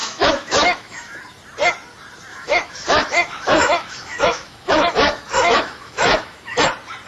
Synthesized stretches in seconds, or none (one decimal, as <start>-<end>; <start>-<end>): 0.0-1.2; 2.3-6.6